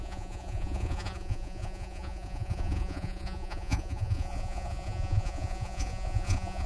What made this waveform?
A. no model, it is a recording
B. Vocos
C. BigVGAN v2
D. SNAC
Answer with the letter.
B